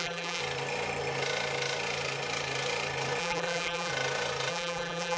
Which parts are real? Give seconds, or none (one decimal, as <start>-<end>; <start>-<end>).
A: 0.4-3.2; 3.9-4.5